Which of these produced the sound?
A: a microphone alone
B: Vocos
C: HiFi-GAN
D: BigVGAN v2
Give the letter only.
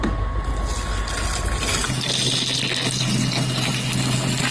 A